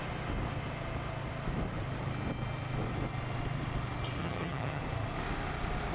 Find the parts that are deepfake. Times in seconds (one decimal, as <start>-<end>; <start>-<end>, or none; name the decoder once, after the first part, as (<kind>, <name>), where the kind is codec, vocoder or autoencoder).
4.2-4.8 (vocoder, HiFi-GAN)